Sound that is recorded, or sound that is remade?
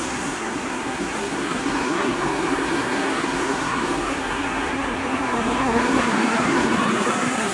remade